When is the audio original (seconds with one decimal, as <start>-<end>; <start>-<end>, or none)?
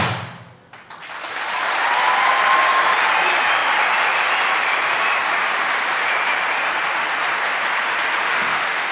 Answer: 0.0-8.2